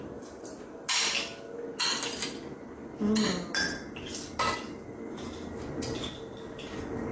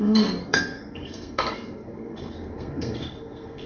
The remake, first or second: second